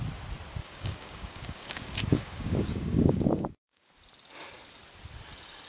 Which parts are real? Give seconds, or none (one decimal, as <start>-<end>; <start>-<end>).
0.0-0.6; 3.9-5.7